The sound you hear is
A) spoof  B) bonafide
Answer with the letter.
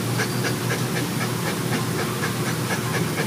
B